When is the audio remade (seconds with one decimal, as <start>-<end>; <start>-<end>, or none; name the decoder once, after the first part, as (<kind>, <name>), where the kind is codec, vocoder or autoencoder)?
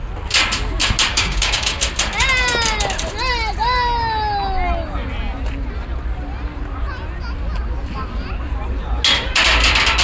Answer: 1.1-1.8 (codec, DAC)